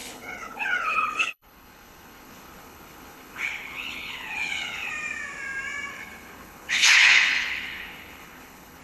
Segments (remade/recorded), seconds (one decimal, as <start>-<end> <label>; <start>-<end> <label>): 0.0-4.9 remade; 4.9-5.9 recorded; 5.9-8.8 remade